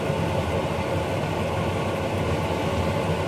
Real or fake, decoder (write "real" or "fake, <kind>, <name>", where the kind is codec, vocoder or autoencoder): real